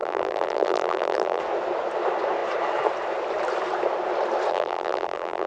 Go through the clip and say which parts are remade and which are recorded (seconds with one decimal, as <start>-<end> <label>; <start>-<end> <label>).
0.0-1.4 remade; 1.4-4.5 recorded; 4.5-5.5 remade